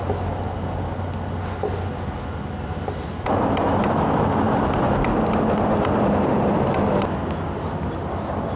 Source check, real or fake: real